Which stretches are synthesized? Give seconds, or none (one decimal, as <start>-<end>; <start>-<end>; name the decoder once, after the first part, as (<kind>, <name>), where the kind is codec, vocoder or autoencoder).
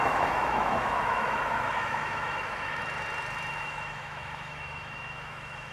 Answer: 0.0-2.8 (autoencoder, DAC-VAE); 3.5-5.7